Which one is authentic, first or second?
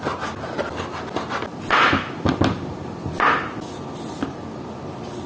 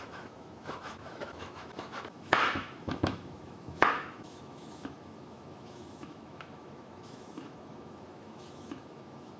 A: first